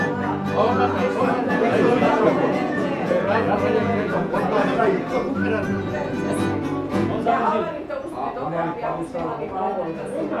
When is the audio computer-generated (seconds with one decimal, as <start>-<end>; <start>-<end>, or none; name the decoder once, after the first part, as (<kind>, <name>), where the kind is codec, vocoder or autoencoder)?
1.0-4.8 (vocoder, Vocos); 6.9-8.5